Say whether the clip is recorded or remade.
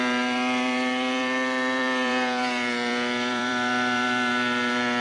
remade